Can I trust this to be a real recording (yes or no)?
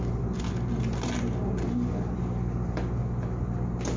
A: yes